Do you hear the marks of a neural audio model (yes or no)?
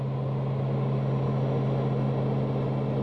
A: no